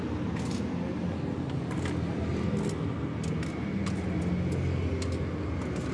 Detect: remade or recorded recorded